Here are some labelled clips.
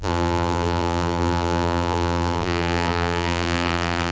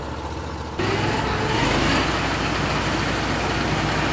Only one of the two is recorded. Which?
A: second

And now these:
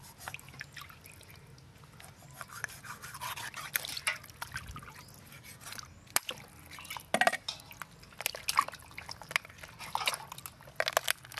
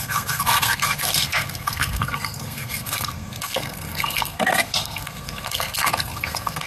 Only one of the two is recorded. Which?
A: first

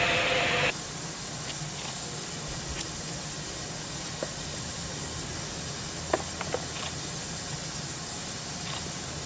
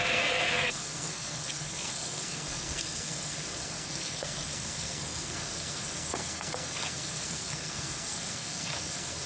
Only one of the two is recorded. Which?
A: first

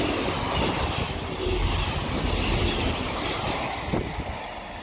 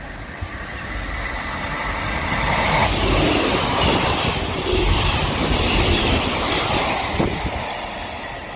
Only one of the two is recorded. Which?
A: first